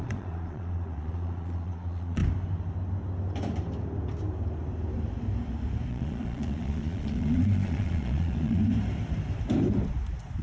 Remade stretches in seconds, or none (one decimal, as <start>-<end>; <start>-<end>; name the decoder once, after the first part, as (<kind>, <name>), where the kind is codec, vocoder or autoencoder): 0.0-2.2 (vocoder, Vocos); 5.9-8.6